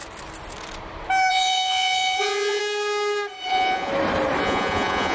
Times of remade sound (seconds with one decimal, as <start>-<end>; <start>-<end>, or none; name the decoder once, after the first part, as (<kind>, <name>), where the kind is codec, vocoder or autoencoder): 1.3-2.6 (vocoder, Vocos); 3.5-3.9; 4.4-5.1